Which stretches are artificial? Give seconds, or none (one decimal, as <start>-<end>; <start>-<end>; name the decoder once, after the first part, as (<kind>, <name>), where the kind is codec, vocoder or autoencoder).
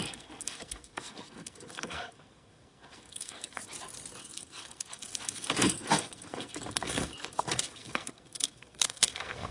0.0-3.6 (codec, SNAC); 4.2-9.5